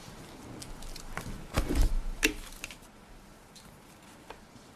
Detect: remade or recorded recorded